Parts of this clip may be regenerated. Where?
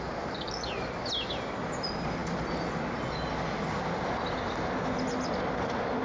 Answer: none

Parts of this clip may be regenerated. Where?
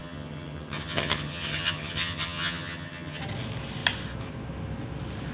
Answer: 0.0-3.2 (vocoder, HiFi-GAN)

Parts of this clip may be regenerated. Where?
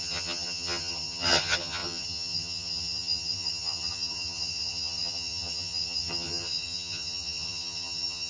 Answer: 0.0-8.3 (vocoder, HiFi-GAN)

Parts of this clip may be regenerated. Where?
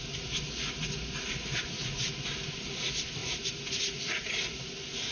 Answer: none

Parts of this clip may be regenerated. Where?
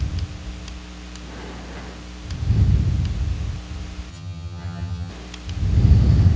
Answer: 4.1-5.1 (vocoder, HiFi-GAN)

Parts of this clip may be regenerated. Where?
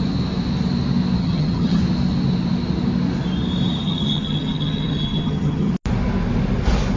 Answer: 1.2-1.8 (vocoder, HiFi-GAN); 3.8-5.7